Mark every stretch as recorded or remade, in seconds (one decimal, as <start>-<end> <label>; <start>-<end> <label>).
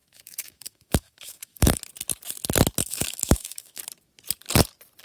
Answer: 0.0-1.8 remade; 1.8-2.8 recorded; 2.8-3.8 remade; 3.8-5.0 recorded